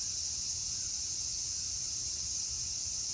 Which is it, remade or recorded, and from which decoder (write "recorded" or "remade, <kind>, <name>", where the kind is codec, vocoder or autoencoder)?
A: remade, vocoder, BigVGAN v2